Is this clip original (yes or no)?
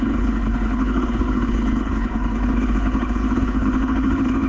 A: no